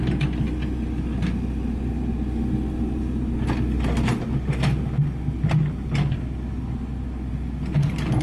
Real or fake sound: real